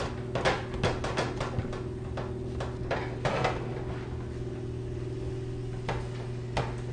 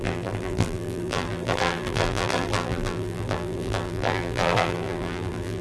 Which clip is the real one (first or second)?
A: first